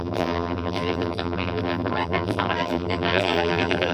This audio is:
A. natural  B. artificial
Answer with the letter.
B